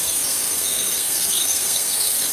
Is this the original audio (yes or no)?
no